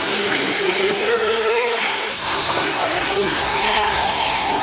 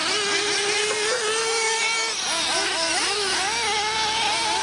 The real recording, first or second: second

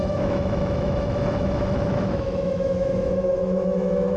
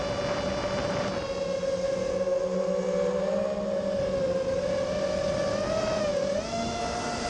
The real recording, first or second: second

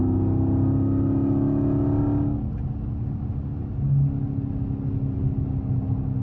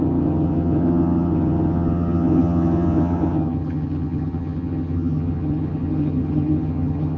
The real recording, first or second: first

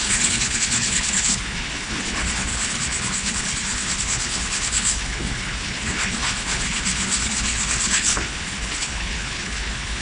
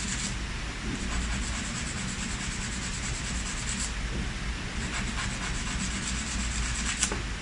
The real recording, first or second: second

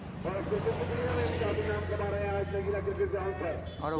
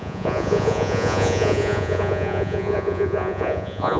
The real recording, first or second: first